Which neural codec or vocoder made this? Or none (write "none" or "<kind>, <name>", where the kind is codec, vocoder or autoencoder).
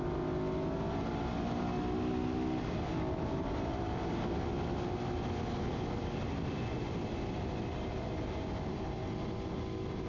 none